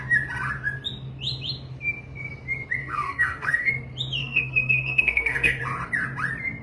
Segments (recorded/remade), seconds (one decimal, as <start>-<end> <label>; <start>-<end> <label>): 0.0-2.8 recorded; 2.8-3.7 remade; 3.7-4.2 recorded; 4.2-5.6 remade; 5.6-6.6 recorded